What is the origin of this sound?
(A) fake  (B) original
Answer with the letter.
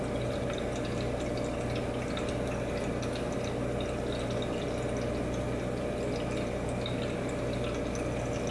B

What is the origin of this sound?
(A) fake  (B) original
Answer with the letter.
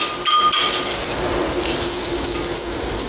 B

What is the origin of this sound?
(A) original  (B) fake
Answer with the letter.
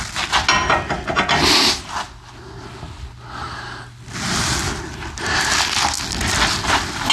A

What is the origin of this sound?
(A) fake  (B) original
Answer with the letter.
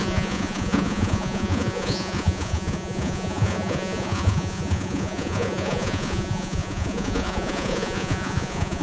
A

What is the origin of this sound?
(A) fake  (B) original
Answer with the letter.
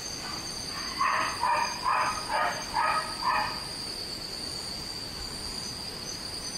B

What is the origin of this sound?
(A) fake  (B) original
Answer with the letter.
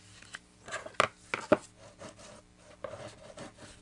B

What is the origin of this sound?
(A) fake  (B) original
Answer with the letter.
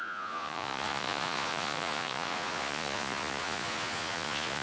A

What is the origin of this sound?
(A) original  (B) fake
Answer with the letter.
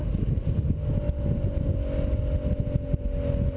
A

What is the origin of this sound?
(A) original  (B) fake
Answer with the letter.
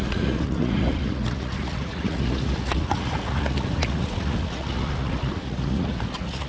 B